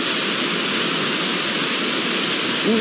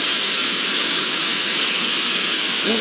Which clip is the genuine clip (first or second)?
first